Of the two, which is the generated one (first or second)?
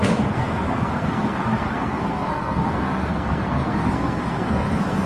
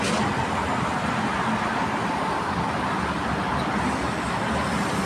first